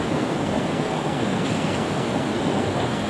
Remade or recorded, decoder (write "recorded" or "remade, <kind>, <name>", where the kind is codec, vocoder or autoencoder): remade, codec, SNAC